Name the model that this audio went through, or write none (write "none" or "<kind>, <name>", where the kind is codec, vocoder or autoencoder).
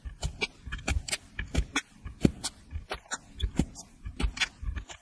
none